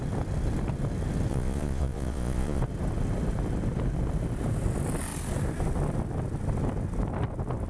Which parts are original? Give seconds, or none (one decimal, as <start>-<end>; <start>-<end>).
0.0-1.3; 2.6-7.7